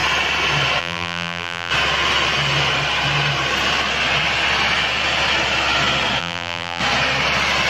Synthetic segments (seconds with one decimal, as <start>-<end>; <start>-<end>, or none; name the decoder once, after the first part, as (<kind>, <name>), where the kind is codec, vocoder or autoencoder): 0.8-1.7 (vocoder, BigVGAN v2); 6.2-6.8